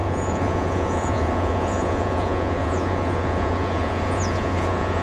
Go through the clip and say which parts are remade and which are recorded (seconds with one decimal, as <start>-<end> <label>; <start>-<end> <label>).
0.0-5.0 remade